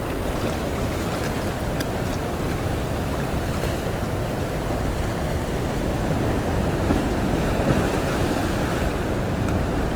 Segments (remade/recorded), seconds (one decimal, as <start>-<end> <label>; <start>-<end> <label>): 0.0-10.0 recorded